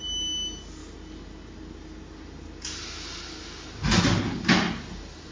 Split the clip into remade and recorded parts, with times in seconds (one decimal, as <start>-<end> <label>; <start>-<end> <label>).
0.0-5.3 recorded